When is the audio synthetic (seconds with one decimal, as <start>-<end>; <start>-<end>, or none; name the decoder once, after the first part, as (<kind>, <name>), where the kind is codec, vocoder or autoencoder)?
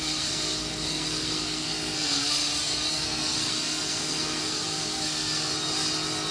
0.0-2.4 (codec, SNAC); 2.9-5.5